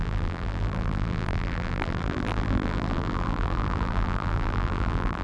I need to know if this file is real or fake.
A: fake